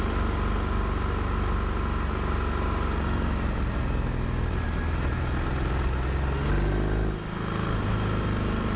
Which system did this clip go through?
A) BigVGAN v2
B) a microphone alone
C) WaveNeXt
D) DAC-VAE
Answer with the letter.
B